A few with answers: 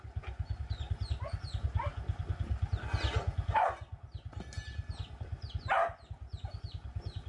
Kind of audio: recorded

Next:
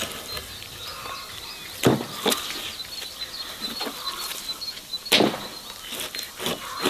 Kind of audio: recorded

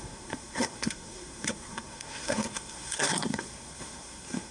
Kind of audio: remade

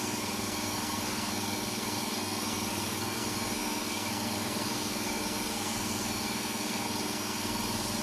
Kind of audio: remade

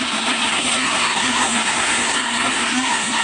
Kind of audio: remade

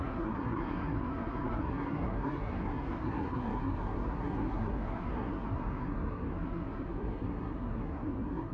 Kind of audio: remade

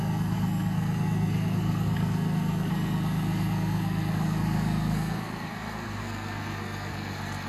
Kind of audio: remade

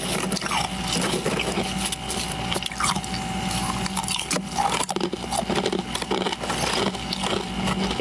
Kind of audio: recorded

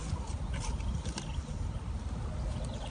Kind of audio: recorded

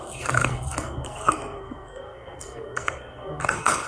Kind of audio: remade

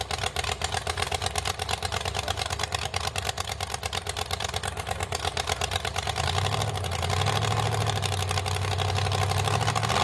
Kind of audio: recorded